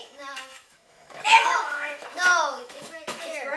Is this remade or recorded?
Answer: remade